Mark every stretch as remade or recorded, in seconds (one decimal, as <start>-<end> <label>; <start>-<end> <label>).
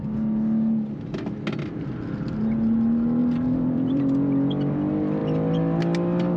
0.0-3.2 recorded; 3.2-4.0 remade; 4.0-5.2 recorded; 5.2-5.8 remade; 5.8-6.4 recorded